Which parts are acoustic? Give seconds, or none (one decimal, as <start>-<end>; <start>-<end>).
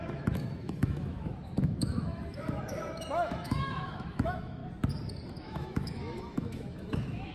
4.6-5.3